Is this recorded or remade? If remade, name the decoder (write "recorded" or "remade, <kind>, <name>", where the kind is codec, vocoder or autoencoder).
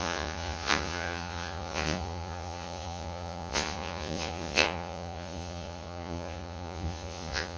remade, vocoder, Vocos